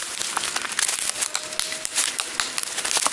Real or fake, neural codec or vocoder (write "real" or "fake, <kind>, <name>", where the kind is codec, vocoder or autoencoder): real